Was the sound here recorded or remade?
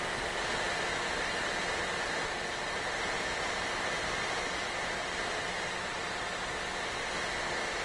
recorded